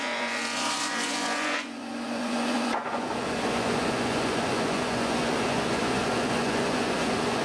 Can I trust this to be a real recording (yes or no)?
no